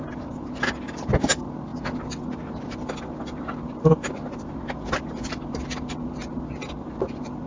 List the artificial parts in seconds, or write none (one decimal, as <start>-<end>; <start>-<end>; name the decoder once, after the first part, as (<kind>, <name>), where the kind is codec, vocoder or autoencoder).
none